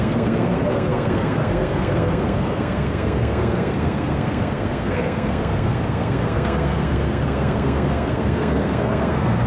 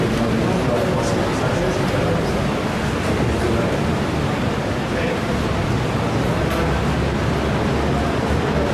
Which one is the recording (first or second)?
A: second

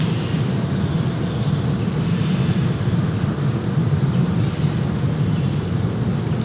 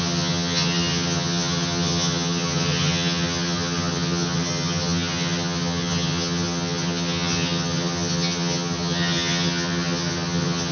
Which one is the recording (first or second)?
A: first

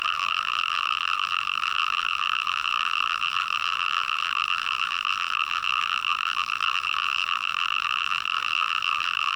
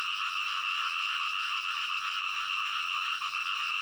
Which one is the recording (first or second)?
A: second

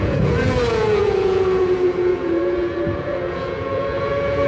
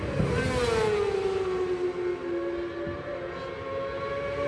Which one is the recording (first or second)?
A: second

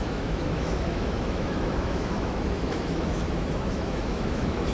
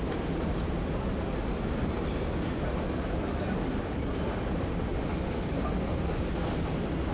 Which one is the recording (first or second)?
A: second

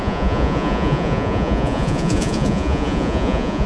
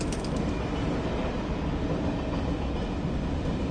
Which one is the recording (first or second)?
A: second